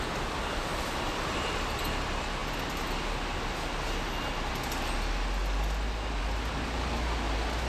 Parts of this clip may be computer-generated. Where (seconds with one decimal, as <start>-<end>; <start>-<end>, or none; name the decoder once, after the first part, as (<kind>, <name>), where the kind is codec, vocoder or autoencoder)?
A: 0.7-1.5 (vocoder, BigVGAN v2)